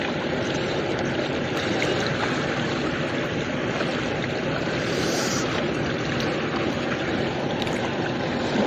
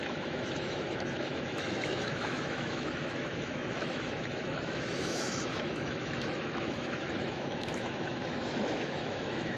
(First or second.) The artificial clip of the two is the second